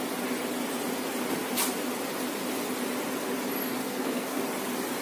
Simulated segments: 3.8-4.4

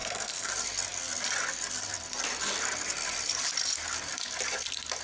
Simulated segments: 0.0-0.5

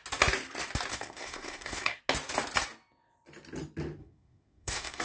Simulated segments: 0.9-2.0; 4.0-5.0

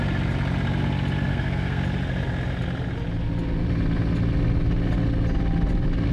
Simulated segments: 1.3-1.8

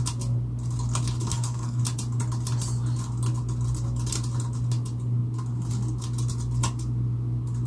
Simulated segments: 1.2-1.8

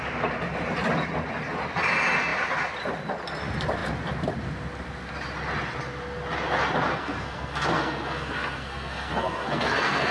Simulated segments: 6.9-10.1